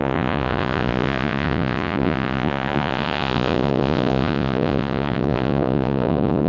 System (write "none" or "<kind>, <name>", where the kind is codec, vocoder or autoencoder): vocoder, Vocos